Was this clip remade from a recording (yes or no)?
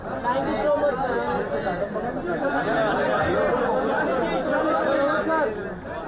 no